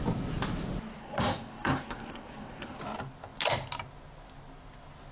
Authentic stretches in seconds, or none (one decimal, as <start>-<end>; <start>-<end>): 0.0-1.0; 2.8-5.1